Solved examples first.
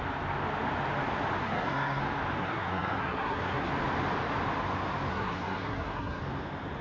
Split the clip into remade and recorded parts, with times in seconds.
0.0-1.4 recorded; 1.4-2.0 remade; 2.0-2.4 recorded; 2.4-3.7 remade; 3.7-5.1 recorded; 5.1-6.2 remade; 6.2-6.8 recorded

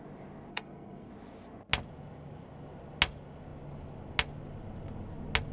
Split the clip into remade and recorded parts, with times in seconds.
0.0-0.5 recorded; 0.5-1.1 remade; 1.1-5.5 recorded